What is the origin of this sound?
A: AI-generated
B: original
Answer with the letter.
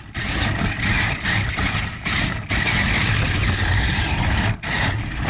B